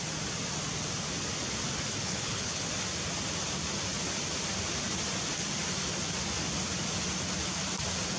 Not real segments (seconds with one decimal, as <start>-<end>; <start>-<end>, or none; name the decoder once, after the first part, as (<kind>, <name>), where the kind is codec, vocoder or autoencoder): 2.0-2.7 (codec, HILCodec)